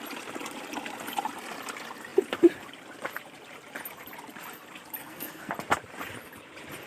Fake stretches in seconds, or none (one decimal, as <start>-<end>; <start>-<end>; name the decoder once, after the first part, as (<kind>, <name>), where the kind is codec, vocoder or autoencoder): 5.0-5.5 (codec, SNAC)